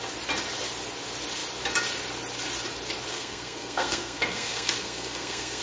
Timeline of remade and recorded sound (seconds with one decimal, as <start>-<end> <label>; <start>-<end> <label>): 0.0-3.1 recorded; 3.1-5.6 remade